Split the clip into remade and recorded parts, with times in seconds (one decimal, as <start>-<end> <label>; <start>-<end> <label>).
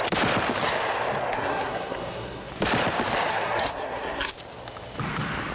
0.0-1.2 recorded; 1.2-2.5 remade; 2.5-3.3 recorded; 3.3-4.3 remade; 4.3-5.5 recorded